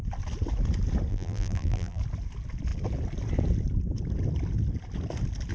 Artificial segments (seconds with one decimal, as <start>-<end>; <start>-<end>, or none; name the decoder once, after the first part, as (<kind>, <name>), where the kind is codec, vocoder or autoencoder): 1.1-2.0 (vocoder, BigVGAN v2)